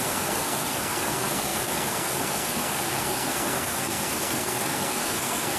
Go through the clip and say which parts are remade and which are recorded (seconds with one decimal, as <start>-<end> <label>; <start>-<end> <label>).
0.0-5.6 remade